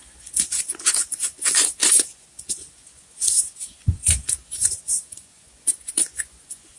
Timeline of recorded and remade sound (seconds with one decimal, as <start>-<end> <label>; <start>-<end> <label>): 0.0-6.8 remade